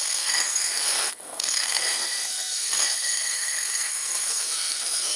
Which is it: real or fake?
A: fake